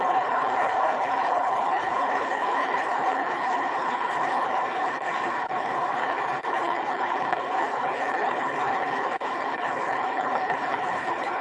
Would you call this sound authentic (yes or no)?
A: no